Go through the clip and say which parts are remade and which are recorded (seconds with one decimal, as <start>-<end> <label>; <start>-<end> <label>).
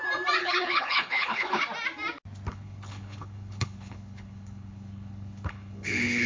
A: 0.0-0.4 recorded; 0.4-1.6 remade; 1.6-2.5 recorded; 2.5-6.3 remade